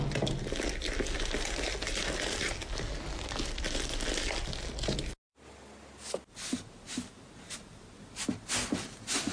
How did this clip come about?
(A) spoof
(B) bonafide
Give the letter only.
B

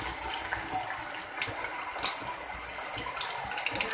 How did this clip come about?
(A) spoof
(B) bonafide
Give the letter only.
B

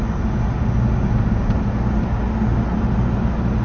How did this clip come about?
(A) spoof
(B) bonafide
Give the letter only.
B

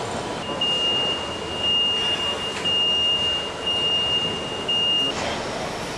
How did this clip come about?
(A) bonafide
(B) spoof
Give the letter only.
A